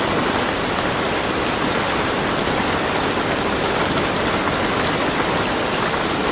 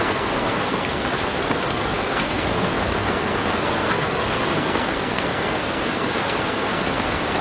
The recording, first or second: first